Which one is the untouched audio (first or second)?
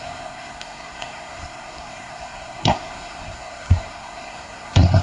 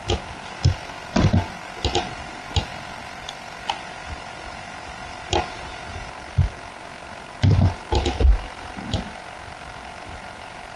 second